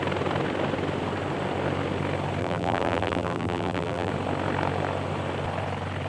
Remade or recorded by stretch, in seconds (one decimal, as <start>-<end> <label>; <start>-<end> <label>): 0.0-2.4 recorded; 2.4-4.1 remade; 4.1-6.1 recorded